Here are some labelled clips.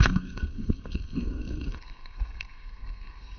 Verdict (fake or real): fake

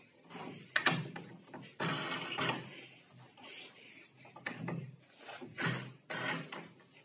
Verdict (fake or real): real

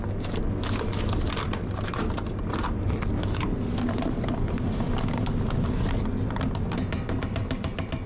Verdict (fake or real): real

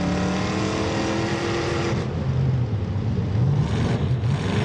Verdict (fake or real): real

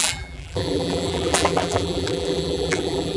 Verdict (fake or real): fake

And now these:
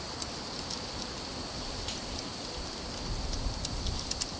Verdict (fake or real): real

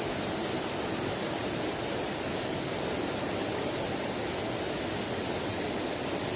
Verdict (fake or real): real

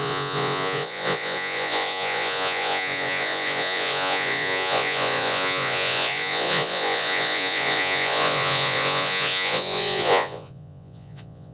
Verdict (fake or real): fake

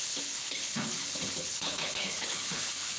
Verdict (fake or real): fake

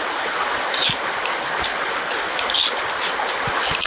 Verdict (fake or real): real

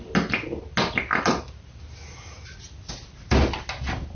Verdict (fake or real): real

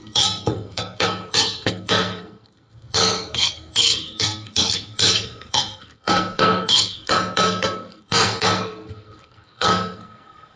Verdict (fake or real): fake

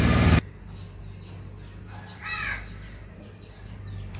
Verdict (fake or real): real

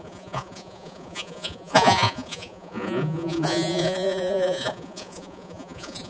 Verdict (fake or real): fake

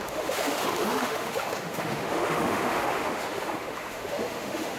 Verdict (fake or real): fake